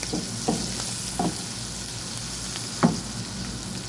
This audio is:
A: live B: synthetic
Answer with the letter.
A